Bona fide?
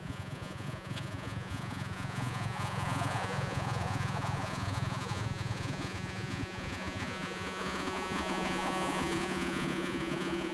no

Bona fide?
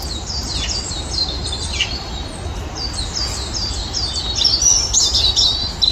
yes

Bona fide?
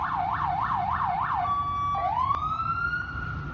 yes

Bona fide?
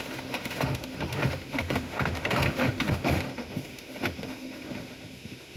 no